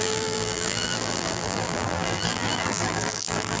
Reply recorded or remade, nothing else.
remade